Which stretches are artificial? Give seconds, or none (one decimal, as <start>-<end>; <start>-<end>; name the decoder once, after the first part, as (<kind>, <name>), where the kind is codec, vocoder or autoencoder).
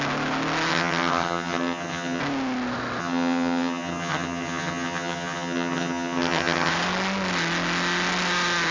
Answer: 0.7-2.2 (vocoder, HiFi-GAN); 3.0-6.7